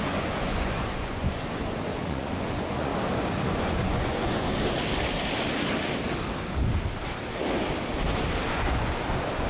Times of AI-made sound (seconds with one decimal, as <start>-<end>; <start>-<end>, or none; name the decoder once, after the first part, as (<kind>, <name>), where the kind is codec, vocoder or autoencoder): 0.0-2.9 (vocoder, Vocos); 3.4-4.5; 8.5-9.5